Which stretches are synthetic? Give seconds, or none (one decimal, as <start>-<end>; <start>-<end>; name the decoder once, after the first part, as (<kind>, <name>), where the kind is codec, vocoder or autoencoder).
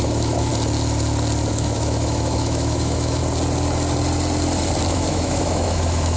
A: 0.0-0.5 (autoencoder, DAC-VAE); 1.5-3.2; 4.9-6.2